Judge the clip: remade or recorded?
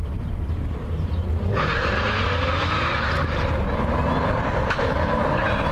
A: recorded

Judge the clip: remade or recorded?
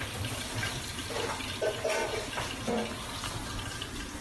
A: recorded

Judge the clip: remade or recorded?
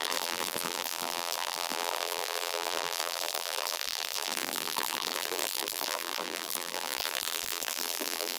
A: remade